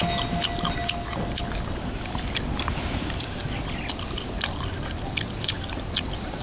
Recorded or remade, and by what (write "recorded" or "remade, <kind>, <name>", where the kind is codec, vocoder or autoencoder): recorded